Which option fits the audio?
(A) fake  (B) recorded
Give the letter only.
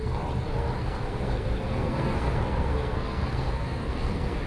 A